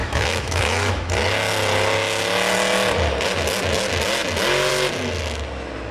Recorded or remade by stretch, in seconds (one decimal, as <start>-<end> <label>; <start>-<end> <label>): 0.0-1.1 remade; 1.1-5.9 recorded

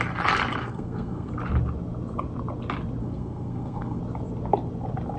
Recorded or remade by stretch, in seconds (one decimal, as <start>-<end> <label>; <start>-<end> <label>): 0.0-0.6 recorded; 0.6-1.3 remade; 1.3-3.0 recorded; 3.0-4.0 remade; 4.0-5.2 recorded

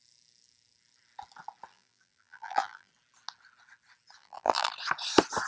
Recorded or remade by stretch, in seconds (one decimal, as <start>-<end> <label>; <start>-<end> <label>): 0.0-1.7 recorded; 1.7-2.9 remade; 2.9-4.2 recorded; 4.2-4.7 remade; 4.7-5.5 recorded

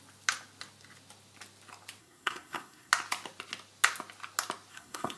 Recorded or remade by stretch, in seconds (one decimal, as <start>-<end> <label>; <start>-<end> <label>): 0.0-2.0 recorded; 2.0-2.9 remade; 2.9-4.7 recorded; 4.7-5.2 remade